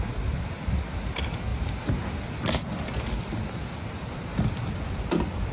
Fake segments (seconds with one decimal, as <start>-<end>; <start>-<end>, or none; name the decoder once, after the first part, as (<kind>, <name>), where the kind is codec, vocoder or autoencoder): none